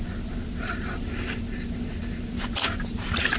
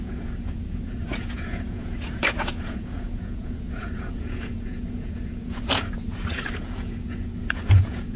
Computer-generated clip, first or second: second